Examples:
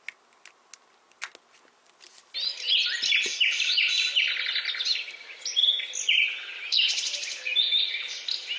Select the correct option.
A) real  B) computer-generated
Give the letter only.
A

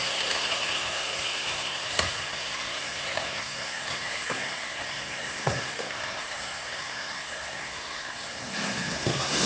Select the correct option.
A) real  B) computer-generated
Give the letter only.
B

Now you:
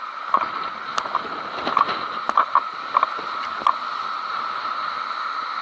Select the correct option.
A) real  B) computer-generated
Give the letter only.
A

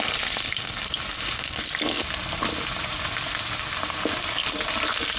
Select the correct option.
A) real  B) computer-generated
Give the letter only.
A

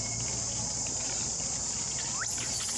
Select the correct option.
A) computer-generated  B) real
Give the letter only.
B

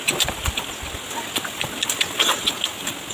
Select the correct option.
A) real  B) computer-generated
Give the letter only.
A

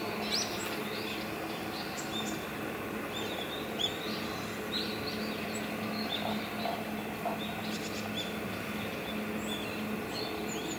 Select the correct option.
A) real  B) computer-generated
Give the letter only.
A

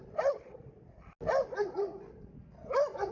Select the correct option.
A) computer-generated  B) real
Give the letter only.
B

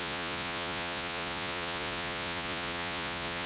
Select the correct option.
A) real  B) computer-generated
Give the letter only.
B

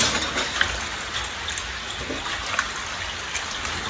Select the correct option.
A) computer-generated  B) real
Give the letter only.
B